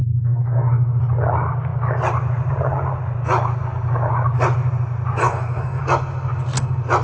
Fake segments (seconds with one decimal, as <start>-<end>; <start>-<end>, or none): 0.0-1.0; 5.2-5.8